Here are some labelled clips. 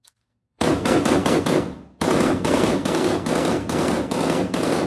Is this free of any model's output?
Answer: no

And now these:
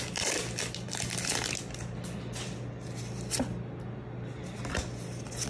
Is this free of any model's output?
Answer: yes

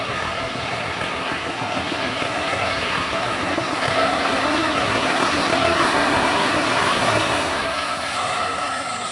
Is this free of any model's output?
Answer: no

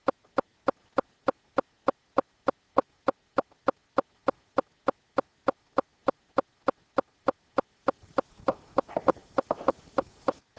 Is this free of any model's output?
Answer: yes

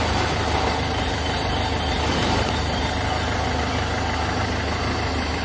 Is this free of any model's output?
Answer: yes